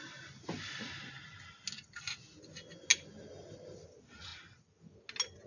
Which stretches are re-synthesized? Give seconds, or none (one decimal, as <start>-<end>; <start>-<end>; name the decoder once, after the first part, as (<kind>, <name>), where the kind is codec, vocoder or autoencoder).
none